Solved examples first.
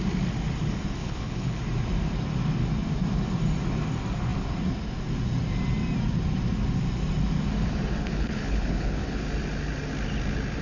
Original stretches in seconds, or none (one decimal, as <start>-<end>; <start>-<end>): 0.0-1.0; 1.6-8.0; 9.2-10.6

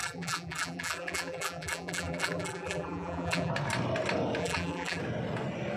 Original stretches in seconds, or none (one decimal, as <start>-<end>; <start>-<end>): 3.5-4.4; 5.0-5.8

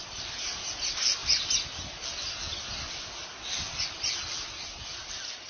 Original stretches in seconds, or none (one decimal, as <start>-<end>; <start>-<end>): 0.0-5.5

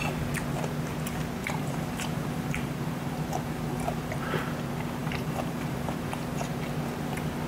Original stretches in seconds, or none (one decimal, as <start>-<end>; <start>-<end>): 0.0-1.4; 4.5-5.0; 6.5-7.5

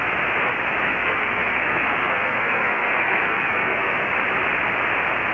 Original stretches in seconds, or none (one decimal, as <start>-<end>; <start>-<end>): 0.0-0.9; 4.1-5.3